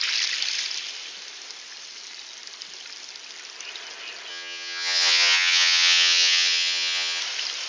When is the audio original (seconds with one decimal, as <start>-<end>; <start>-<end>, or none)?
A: 0.0-4.3; 7.2-7.7